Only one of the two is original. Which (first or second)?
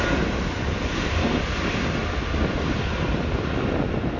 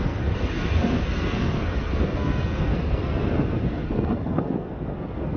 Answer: first